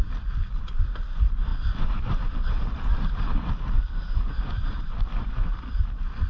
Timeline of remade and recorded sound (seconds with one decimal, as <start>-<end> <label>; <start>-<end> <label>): 0.0-6.3 recorded